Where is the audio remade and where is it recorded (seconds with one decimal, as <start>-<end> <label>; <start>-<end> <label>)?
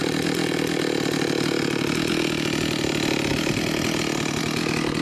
0.0-5.0 recorded